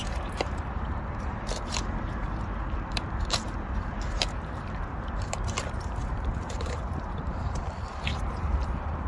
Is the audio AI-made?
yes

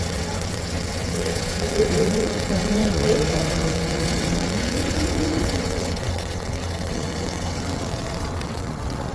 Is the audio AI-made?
yes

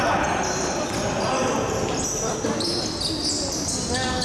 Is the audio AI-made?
no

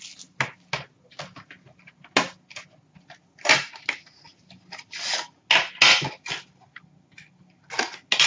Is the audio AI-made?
no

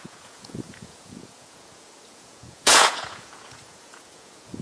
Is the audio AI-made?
yes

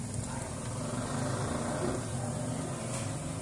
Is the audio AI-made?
no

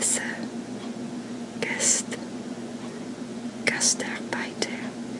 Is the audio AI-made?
yes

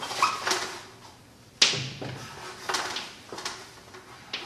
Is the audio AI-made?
no